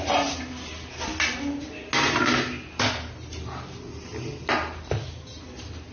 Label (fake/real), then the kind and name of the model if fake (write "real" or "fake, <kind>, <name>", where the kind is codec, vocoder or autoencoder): real